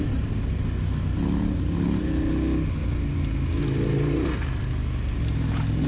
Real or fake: real